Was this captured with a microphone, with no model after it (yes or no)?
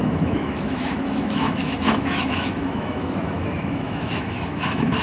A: no